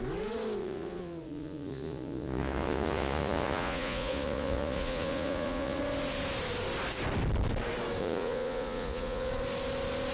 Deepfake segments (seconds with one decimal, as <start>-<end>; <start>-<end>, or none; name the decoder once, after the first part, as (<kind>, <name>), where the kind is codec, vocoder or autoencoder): 0.6-5.8 (vocoder, Vocos); 8.0-9.3